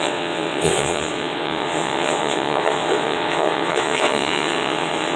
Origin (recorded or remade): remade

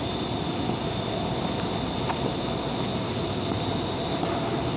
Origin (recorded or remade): recorded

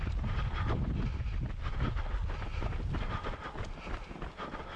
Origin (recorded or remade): recorded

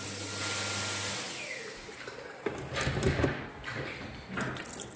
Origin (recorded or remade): recorded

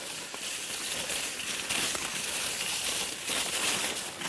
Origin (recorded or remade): recorded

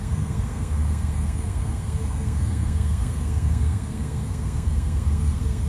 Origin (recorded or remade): remade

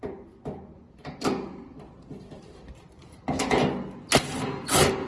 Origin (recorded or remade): recorded